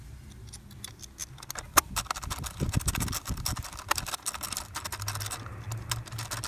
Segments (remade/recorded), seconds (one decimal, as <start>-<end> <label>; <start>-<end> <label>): 0.0-6.5 recorded